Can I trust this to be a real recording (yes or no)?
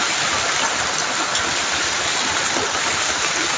yes